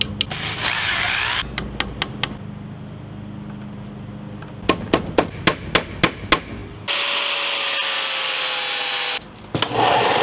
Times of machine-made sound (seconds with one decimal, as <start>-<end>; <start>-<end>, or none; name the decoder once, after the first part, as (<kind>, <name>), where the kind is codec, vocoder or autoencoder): none